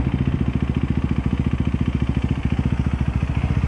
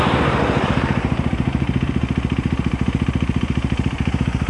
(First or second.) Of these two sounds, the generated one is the second